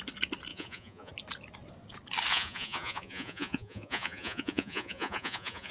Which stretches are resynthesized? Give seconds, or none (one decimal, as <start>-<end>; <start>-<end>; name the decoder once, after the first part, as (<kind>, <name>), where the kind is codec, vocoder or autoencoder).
0.5-1.1 (vocoder, Vocos); 2.3-5.7